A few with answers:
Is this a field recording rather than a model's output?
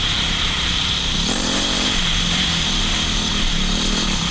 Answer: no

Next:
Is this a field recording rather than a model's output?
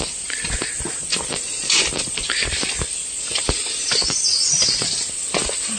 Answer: yes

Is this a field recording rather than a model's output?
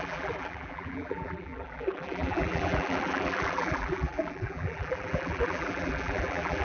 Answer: no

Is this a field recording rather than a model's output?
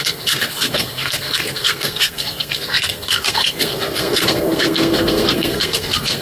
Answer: no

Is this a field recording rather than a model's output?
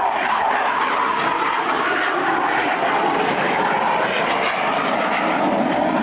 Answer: yes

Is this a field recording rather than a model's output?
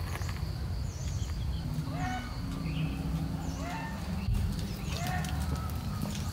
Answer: yes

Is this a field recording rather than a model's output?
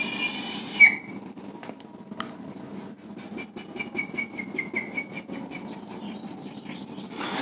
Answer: yes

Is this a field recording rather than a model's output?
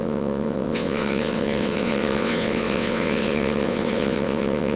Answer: no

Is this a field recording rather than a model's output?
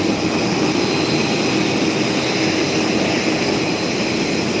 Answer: yes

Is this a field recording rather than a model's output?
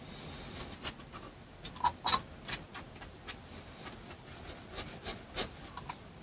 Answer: yes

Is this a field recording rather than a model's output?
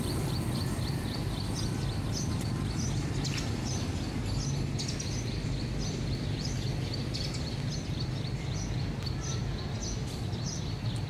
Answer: yes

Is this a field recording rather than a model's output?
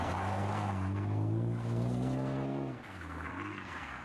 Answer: no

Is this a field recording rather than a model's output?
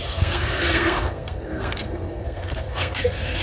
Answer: no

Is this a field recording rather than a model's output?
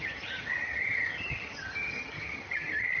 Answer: no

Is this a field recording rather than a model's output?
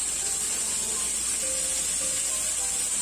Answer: yes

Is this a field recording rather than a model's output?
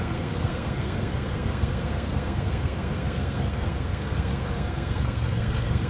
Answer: no